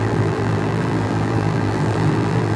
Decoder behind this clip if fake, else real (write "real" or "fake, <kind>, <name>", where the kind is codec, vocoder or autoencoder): fake, vocoder, BigVGAN v2